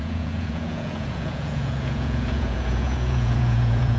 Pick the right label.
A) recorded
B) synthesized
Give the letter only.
B